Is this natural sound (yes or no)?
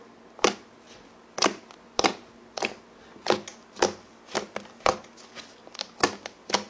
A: yes